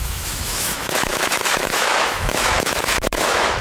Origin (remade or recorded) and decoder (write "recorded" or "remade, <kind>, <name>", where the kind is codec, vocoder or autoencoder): remade, autoencoder, DAC-VAE